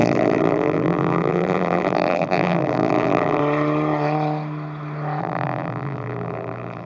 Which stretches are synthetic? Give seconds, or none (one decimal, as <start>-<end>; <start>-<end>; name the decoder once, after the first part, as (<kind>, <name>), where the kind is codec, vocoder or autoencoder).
0.0-3.4 (vocoder, BigVGAN v2); 5.2-6.9